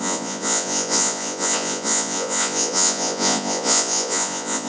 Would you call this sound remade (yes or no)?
yes